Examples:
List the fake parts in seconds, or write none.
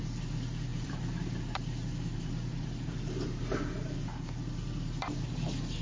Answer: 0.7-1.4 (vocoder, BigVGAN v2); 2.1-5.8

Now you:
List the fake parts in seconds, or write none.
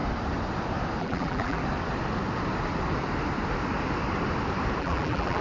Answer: 1.0-1.6 (vocoder, BigVGAN v2); 4.8-5.4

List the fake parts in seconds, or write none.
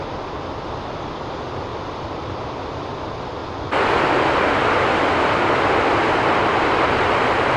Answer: 0.0-1.7 (vocoder, BigVGAN v2); 2.3-3.4; 5.8-7.6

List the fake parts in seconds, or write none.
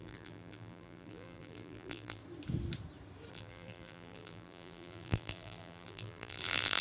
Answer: 0.0-2.2 (vocoder, BigVGAN v2); 3.3-6.8